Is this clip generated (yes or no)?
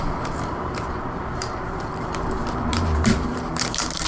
yes